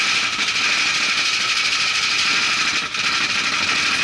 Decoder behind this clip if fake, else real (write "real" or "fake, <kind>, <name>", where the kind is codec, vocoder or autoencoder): real